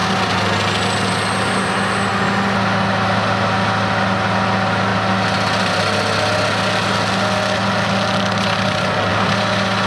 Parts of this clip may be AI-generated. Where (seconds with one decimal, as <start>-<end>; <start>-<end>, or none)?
none